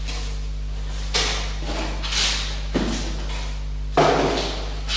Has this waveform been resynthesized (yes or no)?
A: no